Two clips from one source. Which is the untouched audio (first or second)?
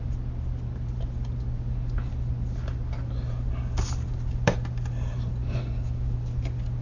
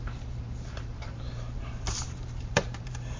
first